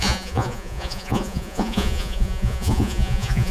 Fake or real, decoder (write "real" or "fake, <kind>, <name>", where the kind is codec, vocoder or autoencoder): fake, vocoder, Vocos